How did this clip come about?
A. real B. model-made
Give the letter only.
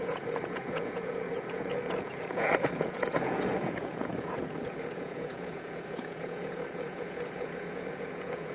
B